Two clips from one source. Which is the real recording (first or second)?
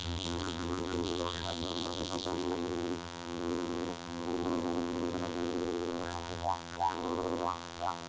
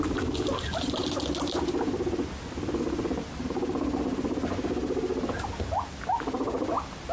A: second